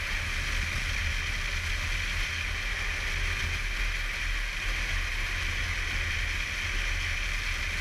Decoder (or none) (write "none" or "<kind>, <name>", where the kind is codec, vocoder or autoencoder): none